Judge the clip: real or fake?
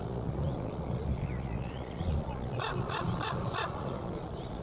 fake